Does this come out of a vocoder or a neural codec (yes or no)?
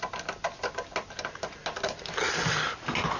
no